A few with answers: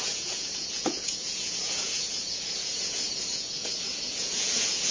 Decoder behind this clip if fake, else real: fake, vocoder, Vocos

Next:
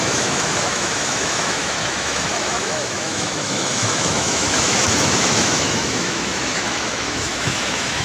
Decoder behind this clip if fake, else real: fake, autoencoder, DAC-VAE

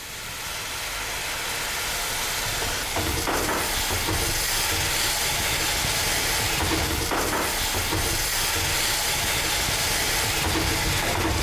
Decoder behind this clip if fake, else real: real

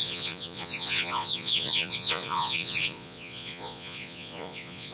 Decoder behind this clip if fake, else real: fake, vocoder, Vocos